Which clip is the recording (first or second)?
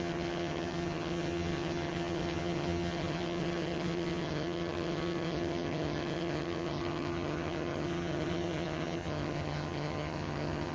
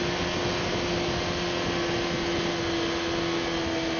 second